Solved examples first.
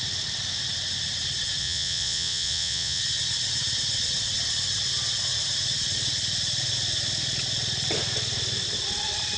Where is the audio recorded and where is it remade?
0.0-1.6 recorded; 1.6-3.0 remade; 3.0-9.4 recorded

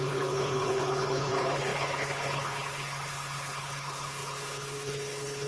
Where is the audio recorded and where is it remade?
0.0-5.5 remade

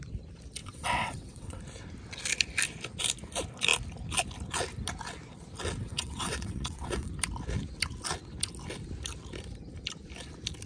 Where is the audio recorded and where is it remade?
0.0-0.6 recorded; 0.6-1.6 remade; 1.6-5.8 recorded; 5.8-7.1 remade; 7.1-10.7 recorded

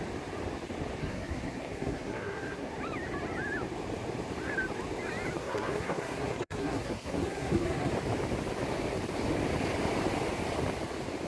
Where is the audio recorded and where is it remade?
0.0-1.0 recorded; 1.0-2.7 remade; 2.7-5.4 recorded; 5.4-7.9 remade; 7.9-11.3 recorded

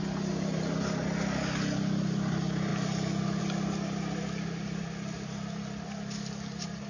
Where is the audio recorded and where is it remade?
0.0-6.9 recorded

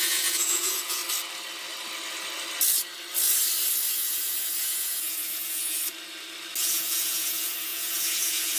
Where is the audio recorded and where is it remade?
0.0-1.0 remade; 1.0-3.9 recorded; 3.9-5.8 remade; 5.8-6.6 recorded; 6.6-8.6 remade

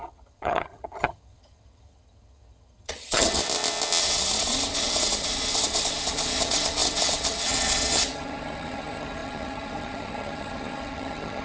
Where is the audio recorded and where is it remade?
0.0-3.4 remade; 3.4-4.0 recorded; 4.0-11.4 remade